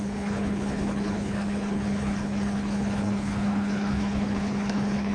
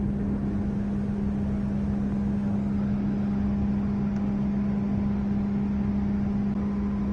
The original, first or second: second